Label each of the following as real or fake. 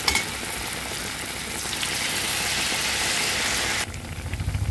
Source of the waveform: real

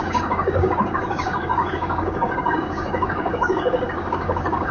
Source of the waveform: fake